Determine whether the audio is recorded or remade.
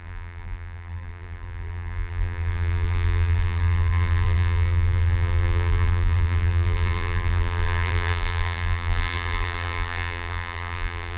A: remade